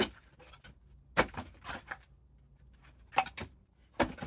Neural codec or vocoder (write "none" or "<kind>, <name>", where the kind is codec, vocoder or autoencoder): none